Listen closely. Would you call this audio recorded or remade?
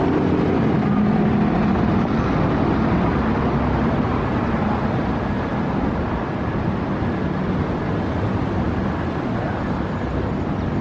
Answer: recorded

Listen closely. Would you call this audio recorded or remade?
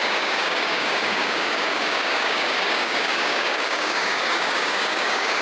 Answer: remade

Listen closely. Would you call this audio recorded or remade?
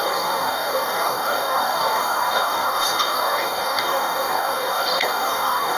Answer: remade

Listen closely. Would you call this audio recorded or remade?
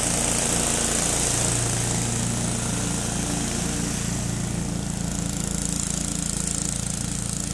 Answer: recorded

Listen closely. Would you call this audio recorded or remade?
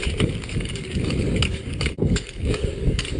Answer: remade